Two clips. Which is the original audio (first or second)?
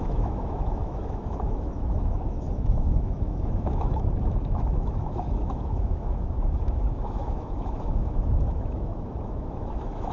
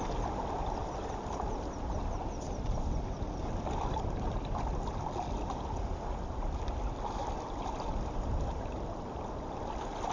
second